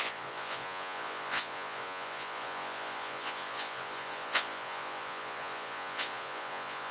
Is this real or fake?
fake